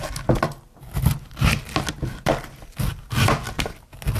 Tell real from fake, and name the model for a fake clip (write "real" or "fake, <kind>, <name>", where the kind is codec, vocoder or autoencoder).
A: real